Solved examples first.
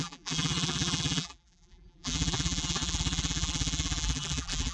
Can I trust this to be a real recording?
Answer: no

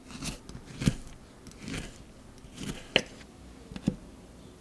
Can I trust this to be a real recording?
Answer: yes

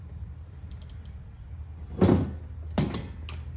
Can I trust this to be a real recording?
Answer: yes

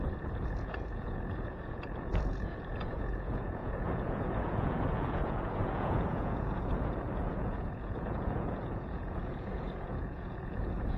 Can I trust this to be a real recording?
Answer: no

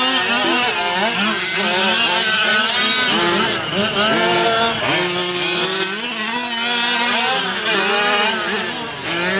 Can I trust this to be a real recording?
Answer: yes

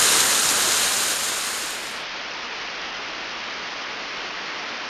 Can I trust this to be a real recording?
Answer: yes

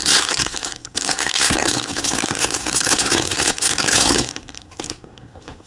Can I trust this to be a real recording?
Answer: no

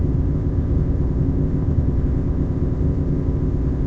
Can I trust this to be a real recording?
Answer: no